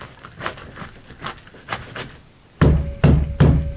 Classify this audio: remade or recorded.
recorded